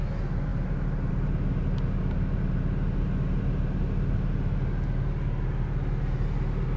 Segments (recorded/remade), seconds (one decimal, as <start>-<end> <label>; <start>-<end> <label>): 0.0-6.8 recorded